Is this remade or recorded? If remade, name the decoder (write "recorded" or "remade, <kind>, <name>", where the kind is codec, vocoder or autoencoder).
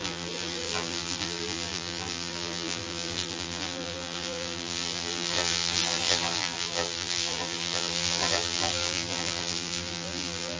remade, vocoder, BigVGAN v2